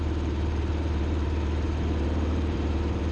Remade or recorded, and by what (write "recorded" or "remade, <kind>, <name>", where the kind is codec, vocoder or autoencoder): remade, vocoder, BigVGAN v2